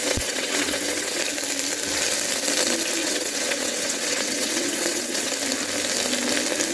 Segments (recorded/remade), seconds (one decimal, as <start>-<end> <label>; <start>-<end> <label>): 0.0-1.2 remade; 1.2-3.0 recorded; 3.0-5.3 remade; 5.3-6.7 recorded